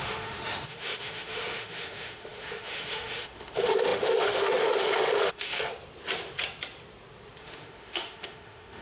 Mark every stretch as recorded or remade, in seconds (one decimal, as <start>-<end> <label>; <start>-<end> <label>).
0.0-5.7 remade; 5.7-7.4 recorded; 7.4-8.8 remade